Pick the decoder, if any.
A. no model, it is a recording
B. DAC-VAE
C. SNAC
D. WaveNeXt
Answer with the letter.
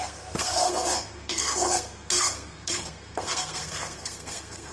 C